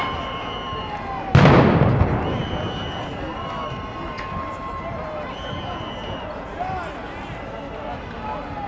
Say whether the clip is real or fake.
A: real